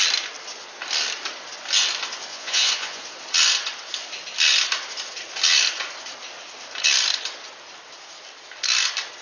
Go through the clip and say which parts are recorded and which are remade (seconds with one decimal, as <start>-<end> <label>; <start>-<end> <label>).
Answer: 0.0-2.3 recorded; 2.3-3.0 remade; 3.0-9.2 recorded